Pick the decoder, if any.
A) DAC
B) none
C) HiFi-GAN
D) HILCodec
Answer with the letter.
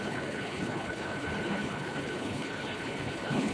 D